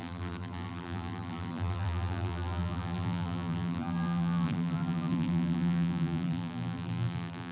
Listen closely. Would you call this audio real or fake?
fake